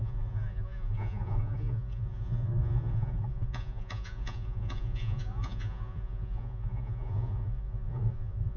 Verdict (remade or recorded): remade